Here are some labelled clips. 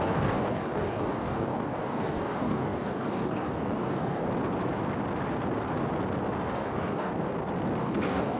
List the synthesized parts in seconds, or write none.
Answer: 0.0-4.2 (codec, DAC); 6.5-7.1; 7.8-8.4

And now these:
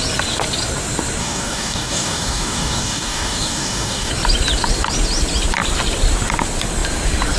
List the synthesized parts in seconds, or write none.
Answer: 1.2-4.1 (codec, DAC)